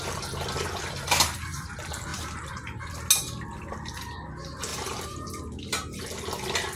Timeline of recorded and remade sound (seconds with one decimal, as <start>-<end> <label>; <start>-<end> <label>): 0.0-2.1 recorded; 2.1-2.8 remade; 2.8-4.7 recorded; 4.7-6.0 remade; 6.0-6.8 recorded

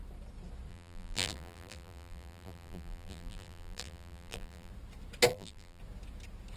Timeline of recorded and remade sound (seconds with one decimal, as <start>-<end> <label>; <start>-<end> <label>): 0.0-0.7 recorded; 0.7-4.7 remade; 4.7-5.3 recorded; 5.3-5.8 remade; 5.8-6.6 recorded

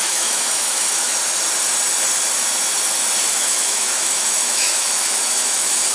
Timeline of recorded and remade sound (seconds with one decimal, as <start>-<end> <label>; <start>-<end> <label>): 0.0-1.1 remade; 1.1-3.3 recorded; 3.3-5.9 remade

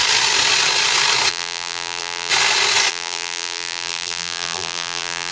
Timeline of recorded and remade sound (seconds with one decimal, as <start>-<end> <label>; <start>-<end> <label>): 0.0-1.3 recorded; 1.3-2.3 remade; 2.3-2.9 recorded; 2.9-5.3 remade

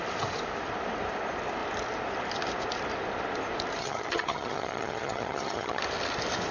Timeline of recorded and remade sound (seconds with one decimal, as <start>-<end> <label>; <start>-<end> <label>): 0.0-3.8 recorded; 3.8-5.8 remade; 5.8-6.5 recorded

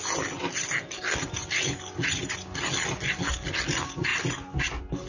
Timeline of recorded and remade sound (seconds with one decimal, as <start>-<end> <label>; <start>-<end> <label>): 0.0-5.1 recorded